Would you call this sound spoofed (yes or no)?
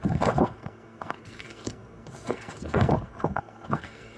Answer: yes